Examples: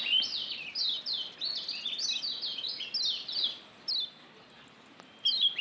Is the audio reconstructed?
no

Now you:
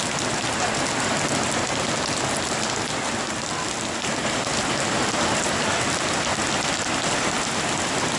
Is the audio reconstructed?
no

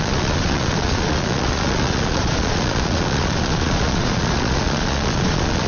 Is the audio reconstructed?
yes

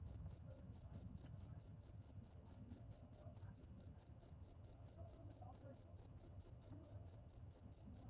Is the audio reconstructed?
yes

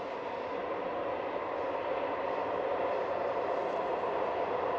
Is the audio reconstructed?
no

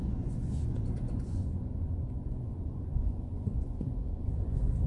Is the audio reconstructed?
yes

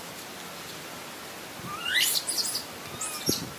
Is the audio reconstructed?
no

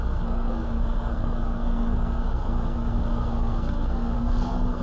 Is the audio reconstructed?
yes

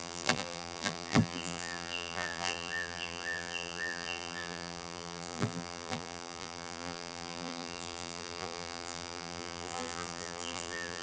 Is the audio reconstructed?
yes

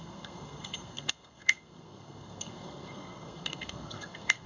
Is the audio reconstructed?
yes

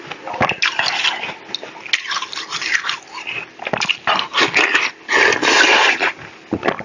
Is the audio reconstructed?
no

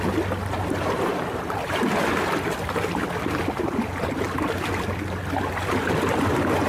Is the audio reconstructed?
no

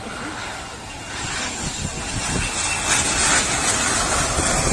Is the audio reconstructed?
no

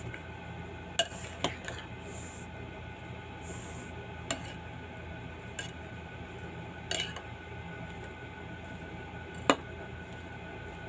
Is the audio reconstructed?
no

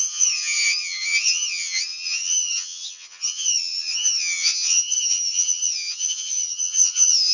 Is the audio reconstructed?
yes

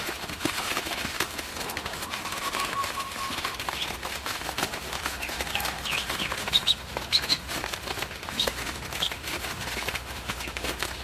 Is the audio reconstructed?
yes